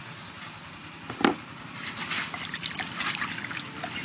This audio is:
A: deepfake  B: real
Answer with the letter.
A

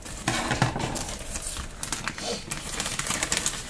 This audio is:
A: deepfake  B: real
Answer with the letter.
B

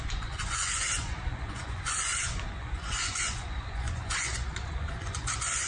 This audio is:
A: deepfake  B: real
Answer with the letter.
A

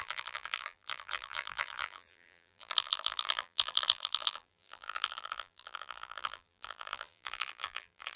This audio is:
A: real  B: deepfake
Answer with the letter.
B